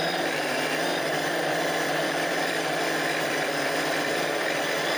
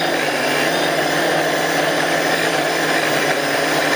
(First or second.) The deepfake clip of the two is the first